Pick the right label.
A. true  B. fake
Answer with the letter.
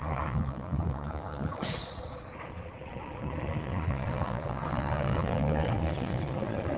B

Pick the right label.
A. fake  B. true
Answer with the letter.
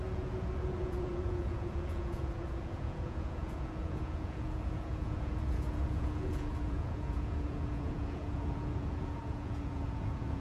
A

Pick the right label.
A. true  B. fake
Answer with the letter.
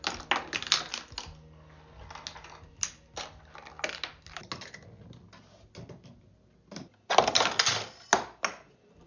A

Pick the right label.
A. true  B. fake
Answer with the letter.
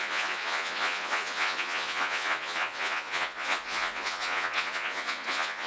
B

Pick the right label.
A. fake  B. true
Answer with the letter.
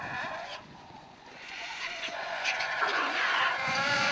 A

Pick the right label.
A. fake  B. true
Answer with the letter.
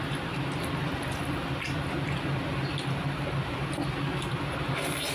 B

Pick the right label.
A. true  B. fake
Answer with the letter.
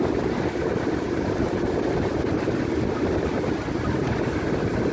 A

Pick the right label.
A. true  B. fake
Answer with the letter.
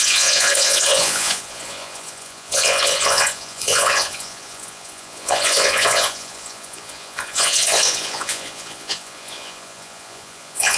B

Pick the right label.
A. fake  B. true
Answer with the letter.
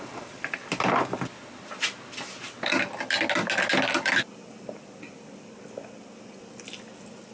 B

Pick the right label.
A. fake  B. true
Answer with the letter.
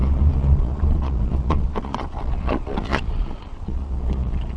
A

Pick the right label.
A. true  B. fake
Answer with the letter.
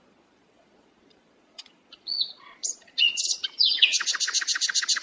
B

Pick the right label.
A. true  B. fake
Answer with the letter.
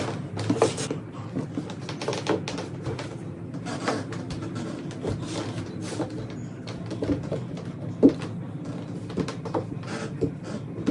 A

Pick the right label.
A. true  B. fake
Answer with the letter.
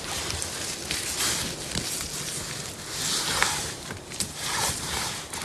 A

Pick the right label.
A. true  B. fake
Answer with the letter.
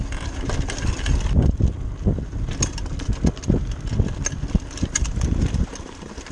A